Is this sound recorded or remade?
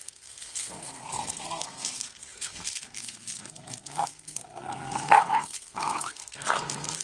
remade